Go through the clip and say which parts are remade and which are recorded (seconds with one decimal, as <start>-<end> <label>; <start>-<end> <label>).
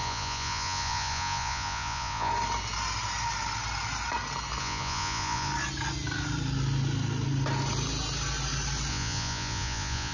0.0-2.3 remade; 2.3-4.6 recorded; 4.6-5.5 remade; 5.5-8.9 recorded; 8.9-10.1 remade